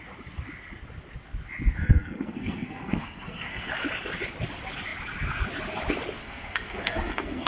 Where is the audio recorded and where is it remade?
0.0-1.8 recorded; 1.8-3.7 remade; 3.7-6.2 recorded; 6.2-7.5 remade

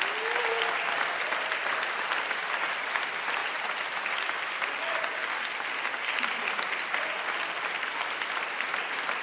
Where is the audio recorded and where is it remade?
0.0-9.2 recorded

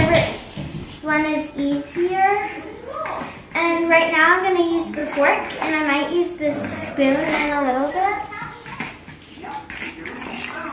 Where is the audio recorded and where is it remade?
0.0-7.3 recorded; 7.3-7.9 remade; 7.9-10.7 recorded

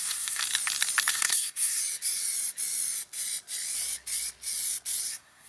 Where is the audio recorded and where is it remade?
0.0-0.4 remade; 0.4-1.1 recorded; 1.1-1.8 remade; 1.8-5.1 recorded; 5.1-5.5 remade

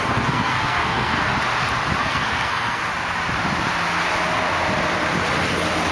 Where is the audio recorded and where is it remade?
0.0-1.3 remade; 1.3-2.0 recorded; 2.0-2.8 remade; 2.8-5.9 recorded

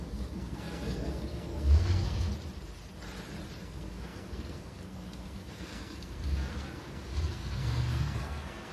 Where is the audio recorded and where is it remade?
0.0-2.3 remade; 2.3-3.6 recorded; 3.6-8.7 remade

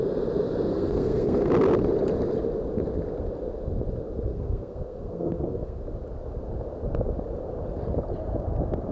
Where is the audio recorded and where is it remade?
0.0-0.7 recorded; 0.7-1.5 remade; 1.5-4.3 recorded; 4.3-5.8 remade; 5.8-8.9 recorded